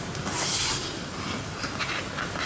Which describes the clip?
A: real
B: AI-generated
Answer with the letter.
A